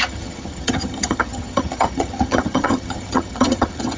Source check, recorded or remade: remade